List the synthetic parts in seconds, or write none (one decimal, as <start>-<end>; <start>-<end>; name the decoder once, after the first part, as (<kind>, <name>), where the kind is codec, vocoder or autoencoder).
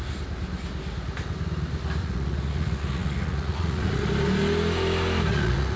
2.0-4.1 (vocoder, Vocos); 5.3-5.8